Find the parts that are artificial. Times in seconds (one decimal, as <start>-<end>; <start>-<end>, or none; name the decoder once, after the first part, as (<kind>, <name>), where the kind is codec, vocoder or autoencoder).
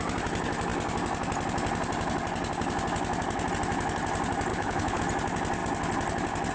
4.5-5.0 (codec, HILCodec)